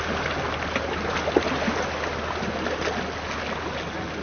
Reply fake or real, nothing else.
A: real